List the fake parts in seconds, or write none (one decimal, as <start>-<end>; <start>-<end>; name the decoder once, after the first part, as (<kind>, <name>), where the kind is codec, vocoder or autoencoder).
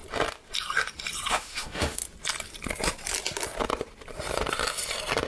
1.3-2.0 (autoencoder, DAC-VAE)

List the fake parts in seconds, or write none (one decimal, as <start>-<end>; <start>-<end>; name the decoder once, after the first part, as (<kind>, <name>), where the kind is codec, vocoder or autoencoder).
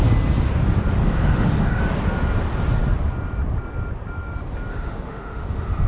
1.0-1.8 (autoencoder, DAC-VAE); 4.7-5.9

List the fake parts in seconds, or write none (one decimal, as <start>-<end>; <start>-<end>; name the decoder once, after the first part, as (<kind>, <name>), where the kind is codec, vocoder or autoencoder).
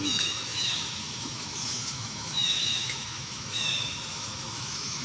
0.0-5.0 (autoencoder, DAC-VAE)